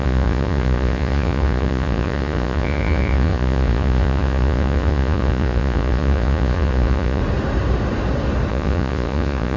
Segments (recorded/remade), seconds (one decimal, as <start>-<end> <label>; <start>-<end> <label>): 0.0-7.2 remade; 7.2-8.5 recorded; 8.5-9.6 remade